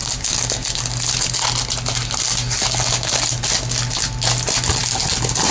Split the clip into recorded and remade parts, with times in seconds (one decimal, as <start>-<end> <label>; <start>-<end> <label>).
0.0-5.5 recorded